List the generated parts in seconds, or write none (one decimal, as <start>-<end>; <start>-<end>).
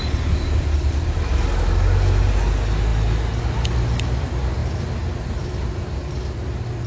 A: none